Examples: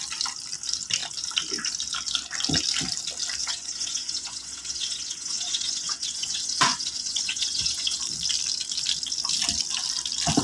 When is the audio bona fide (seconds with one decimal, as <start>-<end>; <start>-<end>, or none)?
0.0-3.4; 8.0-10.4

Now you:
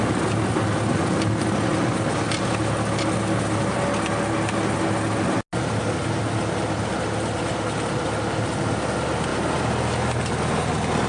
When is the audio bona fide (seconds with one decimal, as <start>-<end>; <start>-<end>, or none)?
0.0-11.1

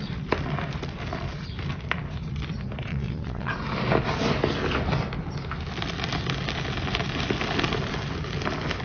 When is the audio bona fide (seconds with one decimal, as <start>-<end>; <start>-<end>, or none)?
0.0-2.9; 3.5-8.8

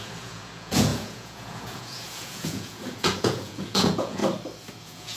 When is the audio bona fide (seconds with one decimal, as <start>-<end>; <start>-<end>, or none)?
4.2-4.8

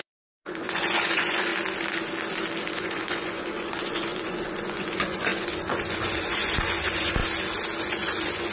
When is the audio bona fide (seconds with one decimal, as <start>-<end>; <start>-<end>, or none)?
1.5-2.7; 7.2-7.8

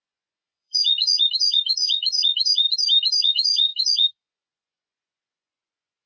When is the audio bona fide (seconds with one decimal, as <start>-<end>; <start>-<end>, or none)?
2.6-3.2